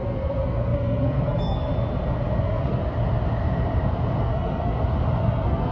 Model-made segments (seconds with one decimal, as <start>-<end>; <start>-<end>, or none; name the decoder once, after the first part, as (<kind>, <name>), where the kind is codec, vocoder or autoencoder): 0.0-1.7 (codec, SNAC); 2.4-2.8; 4.2-4.7; 5.2-5.7